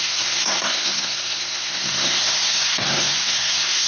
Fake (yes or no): yes